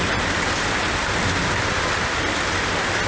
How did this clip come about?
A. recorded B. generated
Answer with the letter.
A